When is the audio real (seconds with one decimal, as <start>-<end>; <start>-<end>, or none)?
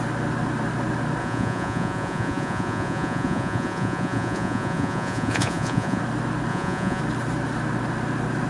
0.0-1.2; 6.0-6.5; 7.0-8.5